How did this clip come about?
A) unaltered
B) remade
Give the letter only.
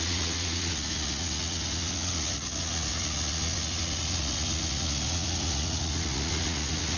B